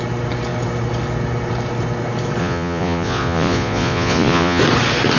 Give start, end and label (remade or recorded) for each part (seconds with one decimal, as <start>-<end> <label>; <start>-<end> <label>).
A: 0.0-2.4 recorded; 2.4-4.6 remade; 4.6-5.2 recorded

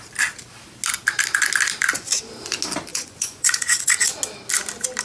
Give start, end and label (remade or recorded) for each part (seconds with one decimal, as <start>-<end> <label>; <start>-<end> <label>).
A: 0.0-2.9 recorded; 2.9-4.1 remade; 4.1-5.0 recorded